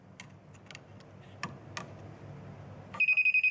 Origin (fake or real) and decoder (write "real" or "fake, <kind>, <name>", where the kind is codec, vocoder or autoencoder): real